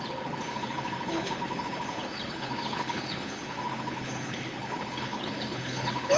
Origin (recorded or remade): remade